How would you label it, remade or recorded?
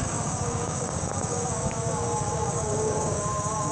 remade